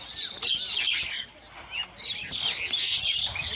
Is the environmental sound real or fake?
real